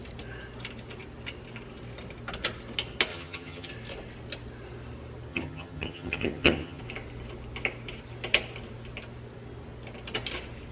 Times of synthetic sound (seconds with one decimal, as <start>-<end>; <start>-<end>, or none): 3.1-3.7; 5.3-6.8